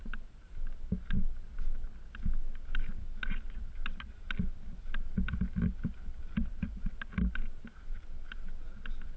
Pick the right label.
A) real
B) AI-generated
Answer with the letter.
A